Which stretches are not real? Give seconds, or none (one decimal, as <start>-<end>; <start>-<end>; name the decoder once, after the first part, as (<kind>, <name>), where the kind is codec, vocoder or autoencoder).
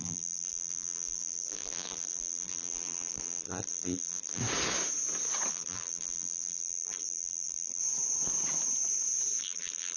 0.0-4.4 (vocoder, BigVGAN v2); 5.5-7.8; 9.4-10.0